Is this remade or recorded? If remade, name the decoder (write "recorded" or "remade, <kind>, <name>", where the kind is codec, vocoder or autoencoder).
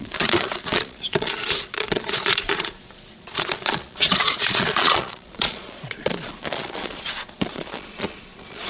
remade, vocoder, Vocos